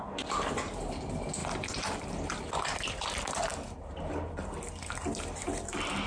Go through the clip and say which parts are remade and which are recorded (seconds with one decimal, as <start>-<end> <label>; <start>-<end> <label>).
0.0-6.1 recorded